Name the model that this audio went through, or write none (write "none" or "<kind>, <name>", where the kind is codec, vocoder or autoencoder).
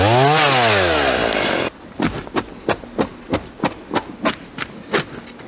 none